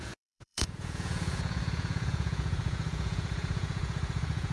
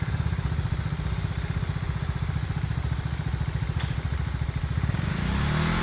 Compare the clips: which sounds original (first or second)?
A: second